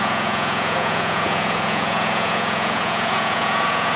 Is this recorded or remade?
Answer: remade